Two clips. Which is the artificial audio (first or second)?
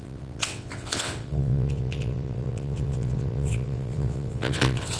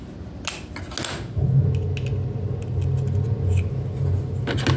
first